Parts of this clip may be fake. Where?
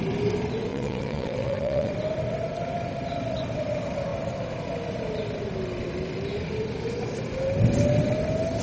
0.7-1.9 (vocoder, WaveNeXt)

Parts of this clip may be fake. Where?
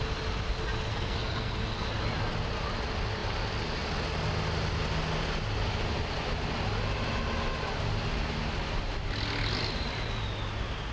0.9-1.9 (codec, SNAC)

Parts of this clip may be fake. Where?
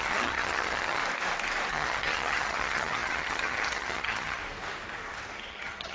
0.0-1.0 (vocoder, HiFi-GAN); 1.7-4.4; 5.5-5.9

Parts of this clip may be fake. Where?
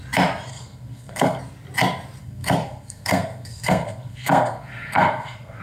0.5-1.4 (codec, SNAC); 2.2-5.6